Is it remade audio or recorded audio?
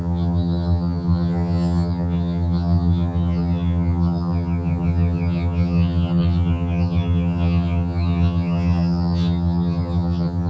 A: remade